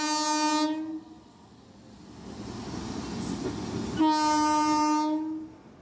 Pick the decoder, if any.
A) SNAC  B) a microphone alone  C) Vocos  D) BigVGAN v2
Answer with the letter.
B